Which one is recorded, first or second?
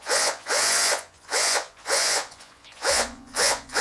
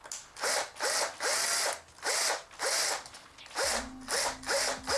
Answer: second